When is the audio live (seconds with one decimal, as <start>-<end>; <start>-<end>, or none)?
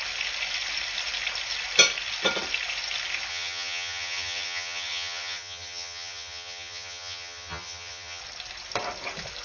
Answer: 0.0-3.3; 8.2-9.4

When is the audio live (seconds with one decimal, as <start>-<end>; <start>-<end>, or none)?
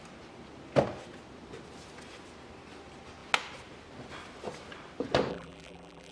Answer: 0.0-5.3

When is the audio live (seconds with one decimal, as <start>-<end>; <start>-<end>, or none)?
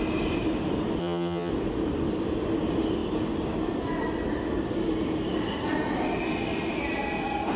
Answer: 0.0-1.0; 1.5-7.6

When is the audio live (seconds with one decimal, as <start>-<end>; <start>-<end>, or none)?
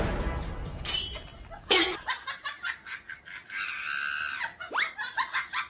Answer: 0.0-5.7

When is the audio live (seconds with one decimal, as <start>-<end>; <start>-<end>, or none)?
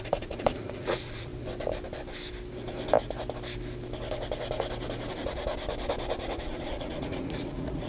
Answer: 1.3-5.1; 5.5-6.2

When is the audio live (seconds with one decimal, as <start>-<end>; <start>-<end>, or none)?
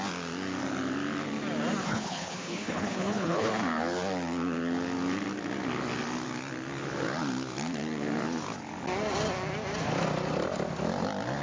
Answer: 0.0-1.8; 3.5-11.4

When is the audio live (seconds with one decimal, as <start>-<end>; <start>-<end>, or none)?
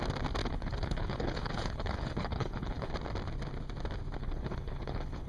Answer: 0.0-0.4; 2.9-4.2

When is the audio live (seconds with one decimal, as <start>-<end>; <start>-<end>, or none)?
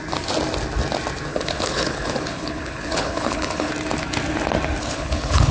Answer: 0.0-1.3; 3.7-4.8